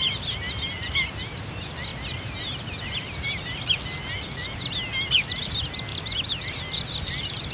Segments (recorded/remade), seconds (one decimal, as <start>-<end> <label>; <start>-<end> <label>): 0.0-7.5 recorded